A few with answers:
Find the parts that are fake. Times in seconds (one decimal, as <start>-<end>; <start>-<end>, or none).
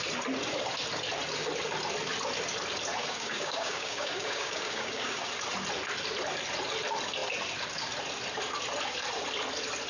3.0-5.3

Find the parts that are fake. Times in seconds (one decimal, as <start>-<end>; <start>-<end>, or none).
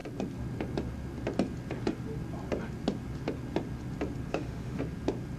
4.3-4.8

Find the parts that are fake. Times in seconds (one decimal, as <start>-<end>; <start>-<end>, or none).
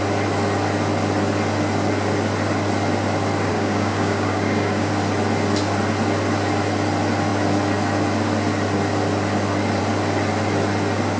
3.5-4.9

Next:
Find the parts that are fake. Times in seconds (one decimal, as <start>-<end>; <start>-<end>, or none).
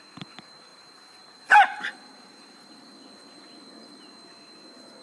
0.7-2.9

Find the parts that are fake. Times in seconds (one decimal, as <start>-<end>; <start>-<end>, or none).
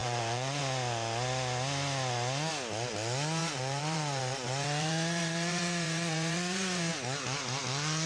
0.0-0.6; 3.4-6.9